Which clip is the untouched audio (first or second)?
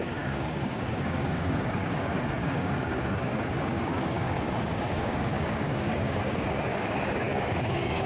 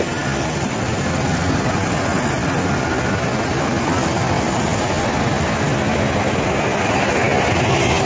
second